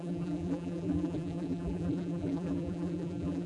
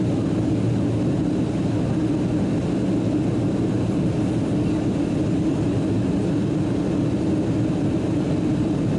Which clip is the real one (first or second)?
second